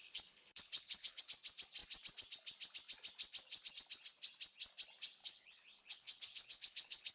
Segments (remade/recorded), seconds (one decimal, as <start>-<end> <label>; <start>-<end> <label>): 0.0-1.2 remade; 1.2-5.2 recorded; 5.2-7.1 remade